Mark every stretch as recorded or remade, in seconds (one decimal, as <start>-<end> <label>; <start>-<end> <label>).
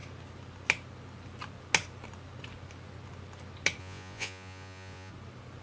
0.0-3.8 recorded; 3.8-5.1 remade; 5.1-5.6 recorded